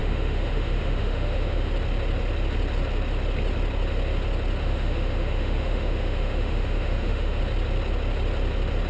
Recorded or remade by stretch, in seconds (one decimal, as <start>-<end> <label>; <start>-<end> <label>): 0.0-1.7 remade; 1.7-4.6 recorded; 4.6-7.4 remade; 7.4-8.9 recorded